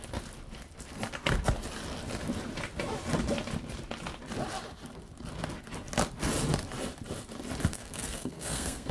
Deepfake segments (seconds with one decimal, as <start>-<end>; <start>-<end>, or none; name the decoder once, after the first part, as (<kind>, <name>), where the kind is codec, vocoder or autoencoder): 7.7-8.9 (codec, SNAC)